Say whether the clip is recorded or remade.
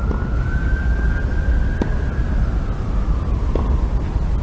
recorded